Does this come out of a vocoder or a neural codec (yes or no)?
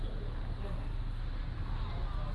no